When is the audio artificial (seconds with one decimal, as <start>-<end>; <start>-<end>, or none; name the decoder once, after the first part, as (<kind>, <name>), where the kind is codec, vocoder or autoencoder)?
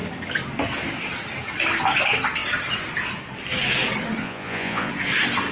4.2-4.9 (vocoder, Vocos)